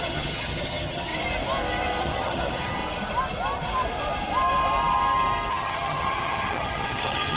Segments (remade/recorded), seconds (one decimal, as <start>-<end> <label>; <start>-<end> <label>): 0.0-1.1 remade; 1.1-2.0 recorded; 2.0-2.8 remade; 2.8-5.5 recorded; 5.5-7.4 remade